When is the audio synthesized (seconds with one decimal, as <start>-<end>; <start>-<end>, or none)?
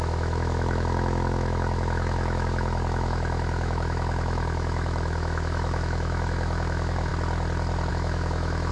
0.0-7.1; 7.9-8.7